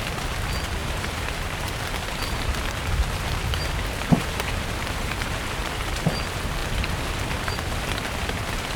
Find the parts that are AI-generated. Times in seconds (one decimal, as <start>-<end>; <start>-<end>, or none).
0.8-5.8